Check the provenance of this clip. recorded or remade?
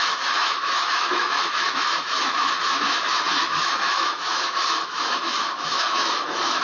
remade